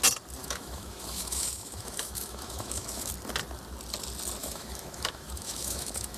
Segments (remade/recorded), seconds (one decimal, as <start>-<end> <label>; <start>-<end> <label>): 0.0-0.4 recorded; 0.4-3.1 remade; 3.1-4.4 recorded; 4.4-6.2 remade